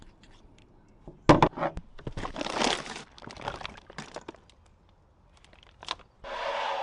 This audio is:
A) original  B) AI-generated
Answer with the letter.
A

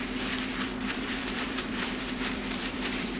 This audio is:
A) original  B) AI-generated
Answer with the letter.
B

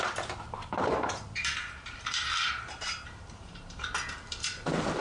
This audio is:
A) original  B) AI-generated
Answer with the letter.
B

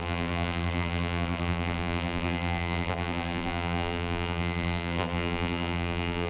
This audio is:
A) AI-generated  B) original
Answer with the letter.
A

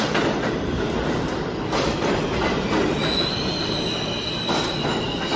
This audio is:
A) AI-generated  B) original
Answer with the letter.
B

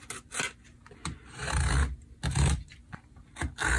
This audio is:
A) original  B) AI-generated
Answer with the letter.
A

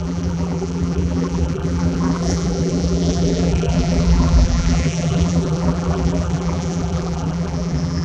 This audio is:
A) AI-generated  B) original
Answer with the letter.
A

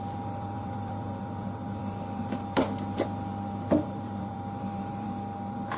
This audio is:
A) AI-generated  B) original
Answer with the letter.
A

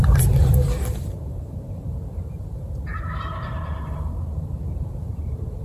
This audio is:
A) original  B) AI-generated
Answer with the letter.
B